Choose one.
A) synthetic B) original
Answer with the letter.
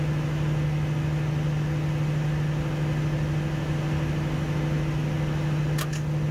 B